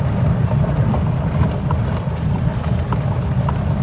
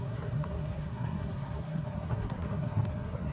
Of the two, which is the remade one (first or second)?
second